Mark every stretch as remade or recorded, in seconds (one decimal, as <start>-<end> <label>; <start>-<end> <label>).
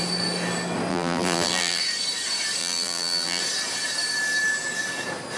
0.0-0.9 recorded; 0.9-1.8 remade; 1.8-2.6 recorded; 2.6-3.4 remade; 3.4-5.4 recorded